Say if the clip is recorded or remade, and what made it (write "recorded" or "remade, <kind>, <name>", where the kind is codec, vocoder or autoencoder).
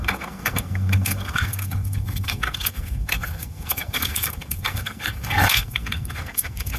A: remade, codec, SNAC